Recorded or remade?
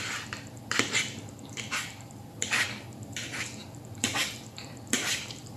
remade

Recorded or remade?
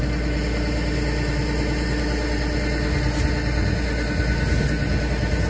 recorded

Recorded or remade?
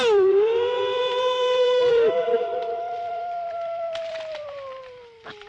remade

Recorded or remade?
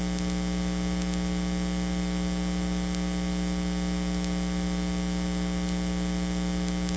recorded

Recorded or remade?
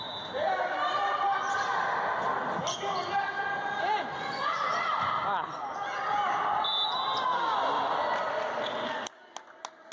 recorded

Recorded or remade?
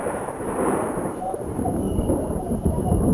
remade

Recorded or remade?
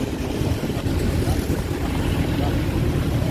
remade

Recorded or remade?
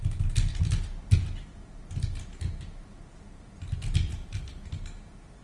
recorded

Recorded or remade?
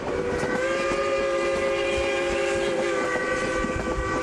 remade